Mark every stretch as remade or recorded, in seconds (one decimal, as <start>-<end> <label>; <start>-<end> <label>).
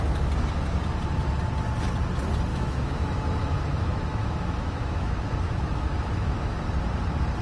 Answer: 0.0-2.5 recorded; 2.5-6.6 remade; 6.6-7.4 recorded